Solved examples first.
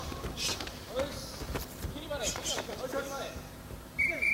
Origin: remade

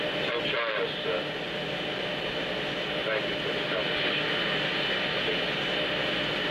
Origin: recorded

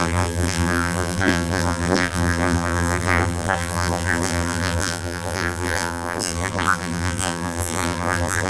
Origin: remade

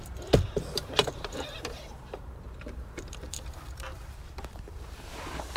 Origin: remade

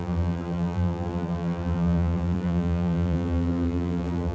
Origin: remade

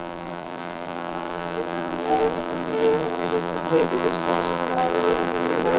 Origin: remade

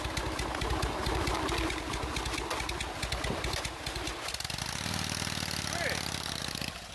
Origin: recorded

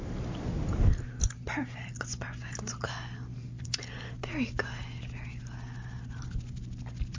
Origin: recorded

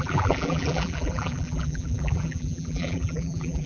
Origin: remade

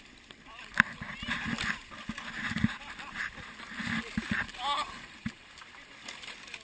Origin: recorded